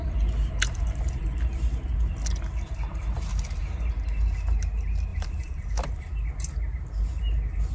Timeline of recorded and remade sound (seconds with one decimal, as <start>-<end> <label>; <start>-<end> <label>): 0.0-1.6 remade; 1.6-3.3 recorded; 3.3-3.9 remade; 3.9-5.1 recorded; 5.1-5.7 remade; 5.7-7.7 recorded